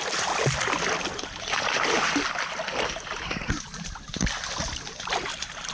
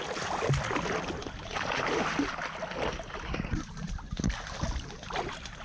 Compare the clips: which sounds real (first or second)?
second